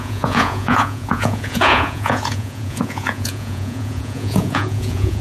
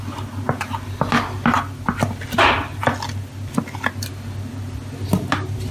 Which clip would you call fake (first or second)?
first